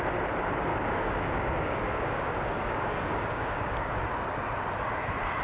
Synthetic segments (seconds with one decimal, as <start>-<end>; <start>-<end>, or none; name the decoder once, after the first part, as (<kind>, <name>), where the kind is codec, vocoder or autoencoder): 0.7-3.9 (codec, DAC)